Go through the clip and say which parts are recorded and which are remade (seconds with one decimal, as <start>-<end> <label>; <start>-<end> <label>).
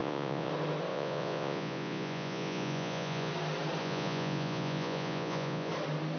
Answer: 0.0-0.5 remade; 0.5-0.9 recorded; 0.9-3.3 remade; 3.3-3.8 recorded; 3.8-5.7 remade; 5.7-6.2 recorded